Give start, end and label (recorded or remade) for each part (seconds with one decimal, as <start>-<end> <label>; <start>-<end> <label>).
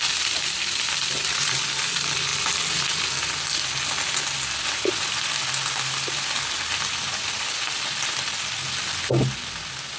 0.0-10.0 recorded